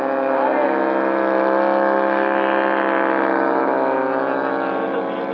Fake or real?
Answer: real